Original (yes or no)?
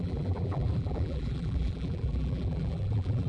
no